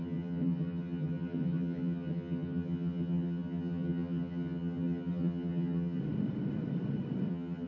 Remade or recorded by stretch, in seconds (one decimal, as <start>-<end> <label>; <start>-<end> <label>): 0.0-6.0 remade; 6.0-7.3 recorded; 7.3-7.7 remade